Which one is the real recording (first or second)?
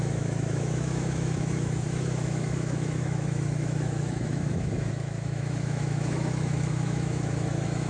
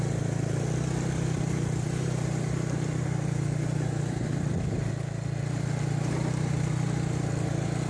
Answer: second